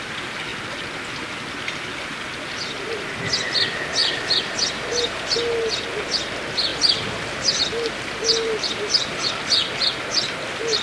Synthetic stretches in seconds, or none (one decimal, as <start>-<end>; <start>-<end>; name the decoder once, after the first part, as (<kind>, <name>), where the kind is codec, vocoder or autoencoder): 4.0-5.7 (vocoder, BigVGAN v2); 6.7-9.3